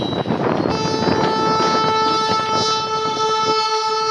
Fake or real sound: real